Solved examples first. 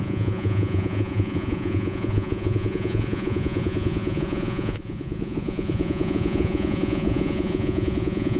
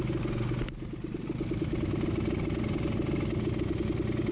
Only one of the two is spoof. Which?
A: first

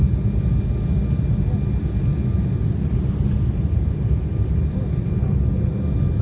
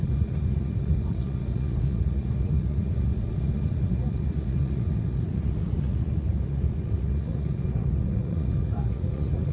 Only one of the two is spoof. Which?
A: second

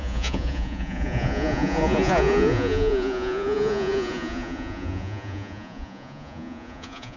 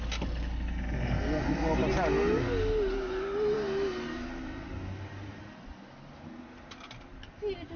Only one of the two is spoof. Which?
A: first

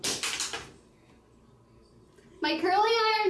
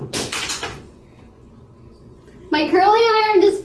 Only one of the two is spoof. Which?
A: second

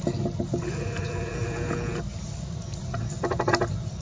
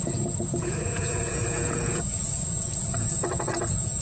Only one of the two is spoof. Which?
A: second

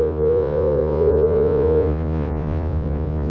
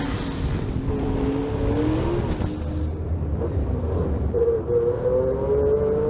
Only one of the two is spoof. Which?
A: first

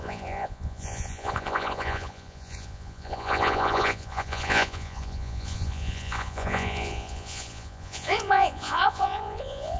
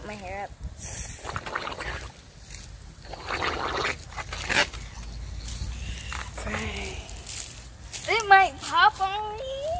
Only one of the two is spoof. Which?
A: first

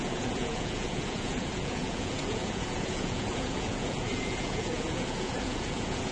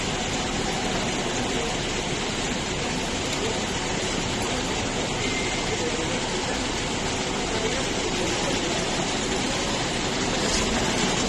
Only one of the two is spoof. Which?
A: first